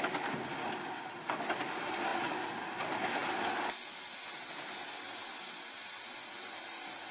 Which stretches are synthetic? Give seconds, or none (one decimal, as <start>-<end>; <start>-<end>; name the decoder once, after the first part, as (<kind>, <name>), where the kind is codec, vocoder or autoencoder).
none